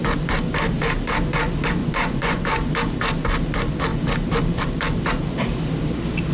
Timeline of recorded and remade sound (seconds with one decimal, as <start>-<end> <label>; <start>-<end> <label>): 0.0-1.8 recorded; 1.8-2.4 remade; 2.4-6.3 recorded